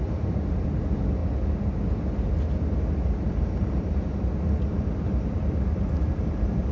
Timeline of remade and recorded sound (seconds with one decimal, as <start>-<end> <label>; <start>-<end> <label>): 0.0-1.2 remade; 1.2-3.2 recorded; 3.2-6.7 remade